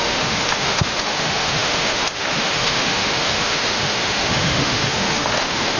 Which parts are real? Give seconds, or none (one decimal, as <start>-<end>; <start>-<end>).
none